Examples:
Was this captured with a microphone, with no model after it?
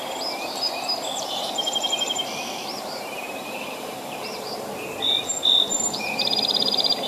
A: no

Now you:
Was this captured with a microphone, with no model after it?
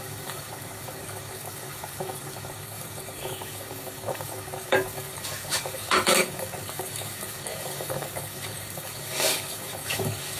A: no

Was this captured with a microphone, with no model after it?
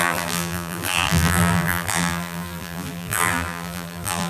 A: no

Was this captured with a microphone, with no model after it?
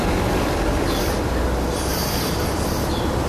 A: yes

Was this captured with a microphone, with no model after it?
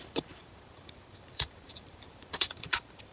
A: no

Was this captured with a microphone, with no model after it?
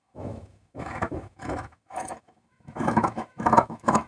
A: no